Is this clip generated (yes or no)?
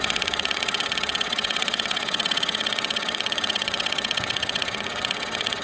yes